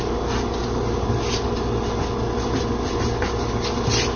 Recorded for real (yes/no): yes